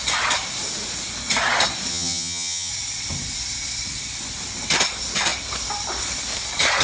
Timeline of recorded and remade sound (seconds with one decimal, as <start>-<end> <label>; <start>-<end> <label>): 0.0-1.9 recorded; 1.9-2.7 remade; 2.7-6.8 recorded